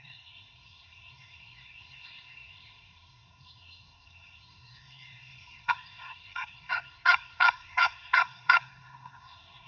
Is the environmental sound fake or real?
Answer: fake